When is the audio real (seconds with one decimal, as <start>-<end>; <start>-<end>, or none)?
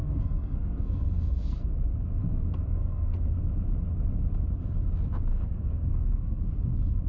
1.7-2.2; 3.3-5.3; 6.4-7.1